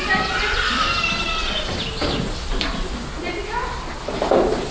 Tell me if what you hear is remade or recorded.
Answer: recorded